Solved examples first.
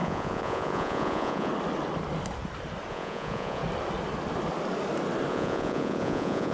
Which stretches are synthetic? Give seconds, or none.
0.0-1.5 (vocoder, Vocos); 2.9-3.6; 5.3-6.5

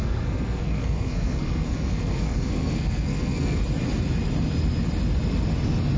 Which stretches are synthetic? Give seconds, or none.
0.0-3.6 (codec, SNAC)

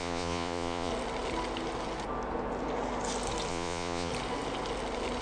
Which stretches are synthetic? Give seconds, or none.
0.0-0.9 (vocoder, Vocos); 3.5-4.1

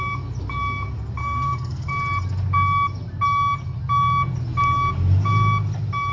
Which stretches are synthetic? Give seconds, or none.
1.2-1.9 (codec, SNAC)

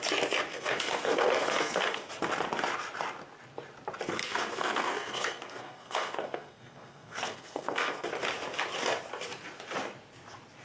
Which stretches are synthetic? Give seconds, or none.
0.5-2.0 (codec, SNAC); 4.2-8.1